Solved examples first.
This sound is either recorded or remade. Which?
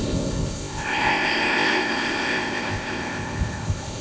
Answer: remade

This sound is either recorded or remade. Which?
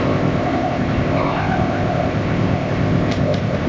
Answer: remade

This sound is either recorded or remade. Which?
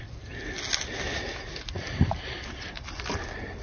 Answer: recorded